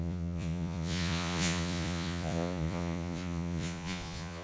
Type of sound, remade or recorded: remade